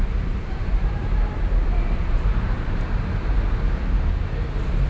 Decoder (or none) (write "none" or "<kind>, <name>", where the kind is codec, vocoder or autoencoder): vocoder, BigVGAN v2